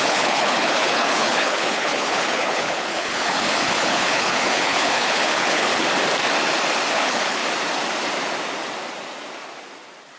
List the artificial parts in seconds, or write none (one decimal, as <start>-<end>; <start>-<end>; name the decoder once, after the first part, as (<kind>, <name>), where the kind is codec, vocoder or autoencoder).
0.0-5.7 (codec, HILCodec); 6.9-7.4